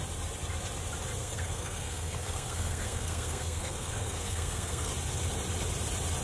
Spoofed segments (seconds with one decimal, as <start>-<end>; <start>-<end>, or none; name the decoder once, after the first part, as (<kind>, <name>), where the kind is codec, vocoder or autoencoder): 1.2-4.9 (codec, SNAC)